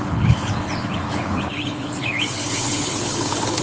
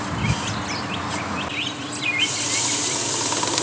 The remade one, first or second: first